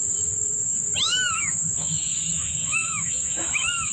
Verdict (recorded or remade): remade